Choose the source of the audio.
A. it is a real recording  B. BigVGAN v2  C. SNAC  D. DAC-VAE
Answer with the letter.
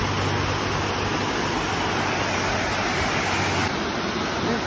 A